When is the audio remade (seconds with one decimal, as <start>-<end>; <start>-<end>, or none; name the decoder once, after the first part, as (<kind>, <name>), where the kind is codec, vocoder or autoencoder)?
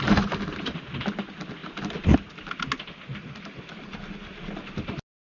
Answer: none